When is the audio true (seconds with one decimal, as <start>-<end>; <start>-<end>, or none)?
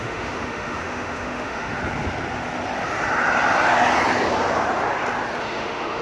1.8-5.4